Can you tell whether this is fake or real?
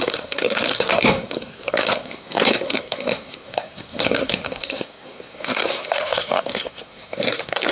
fake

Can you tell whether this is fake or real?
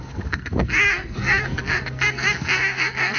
fake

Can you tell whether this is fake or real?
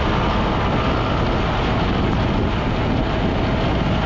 real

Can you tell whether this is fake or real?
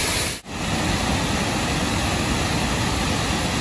real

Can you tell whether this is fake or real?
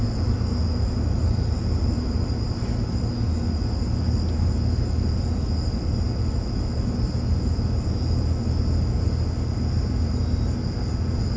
real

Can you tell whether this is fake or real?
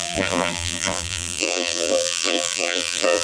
fake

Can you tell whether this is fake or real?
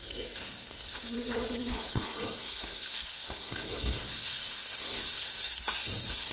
fake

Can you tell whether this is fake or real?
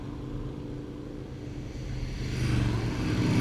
real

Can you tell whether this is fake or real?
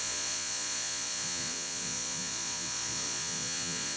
fake